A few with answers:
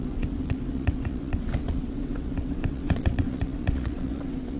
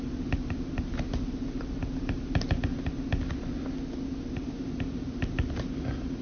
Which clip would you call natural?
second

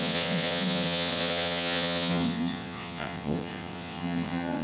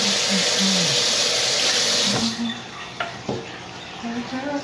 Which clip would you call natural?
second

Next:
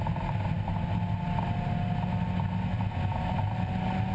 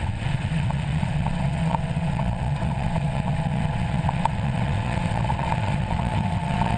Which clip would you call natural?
first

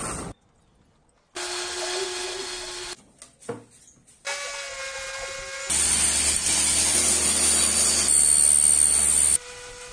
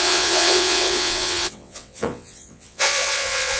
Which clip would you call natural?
first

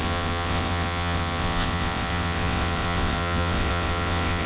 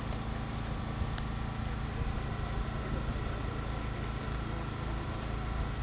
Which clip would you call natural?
second